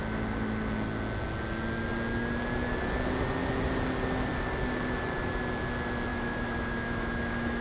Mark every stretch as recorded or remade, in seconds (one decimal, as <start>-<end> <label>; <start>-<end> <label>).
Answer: 0.0-6.1 recorded; 6.1-7.6 remade